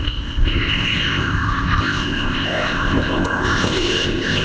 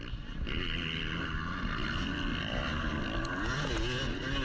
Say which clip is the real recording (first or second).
second